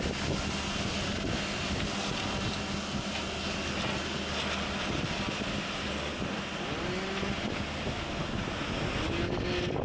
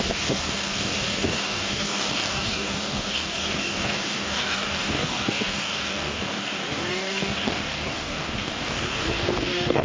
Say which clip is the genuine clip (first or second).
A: first